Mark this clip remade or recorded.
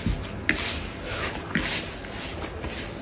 recorded